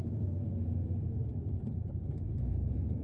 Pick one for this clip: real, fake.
real